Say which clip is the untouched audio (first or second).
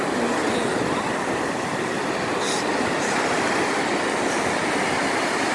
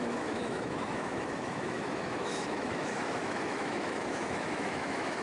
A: first